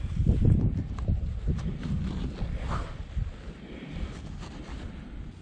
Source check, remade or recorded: recorded